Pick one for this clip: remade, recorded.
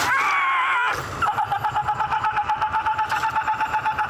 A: recorded